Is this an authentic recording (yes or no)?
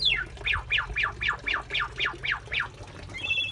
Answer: yes